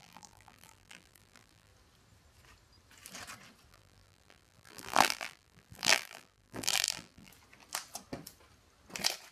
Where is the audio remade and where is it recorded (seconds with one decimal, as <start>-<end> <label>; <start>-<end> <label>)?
0.0-1.7 remade; 1.7-3.7 recorded; 3.7-7.3 remade; 7.3-9.3 recorded